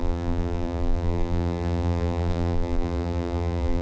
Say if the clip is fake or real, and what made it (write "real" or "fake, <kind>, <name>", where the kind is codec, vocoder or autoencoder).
fake, vocoder, BigVGAN v2